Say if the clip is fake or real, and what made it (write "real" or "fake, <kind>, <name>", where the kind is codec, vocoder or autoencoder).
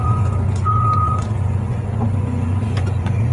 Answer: fake, vocoder, Vocos